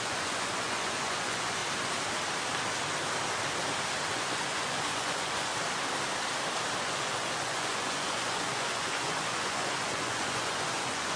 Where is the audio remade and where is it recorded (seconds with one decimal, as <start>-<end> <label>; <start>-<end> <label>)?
0.0-1.6 remade; 1.6-4.1 recorded; 4.1-5.5 remade; 5.5-6.8 recorded; 6.8-11.2 remade